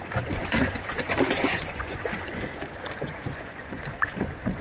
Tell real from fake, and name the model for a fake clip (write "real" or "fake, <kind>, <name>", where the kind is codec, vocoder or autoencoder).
fake, vocoder, Vocos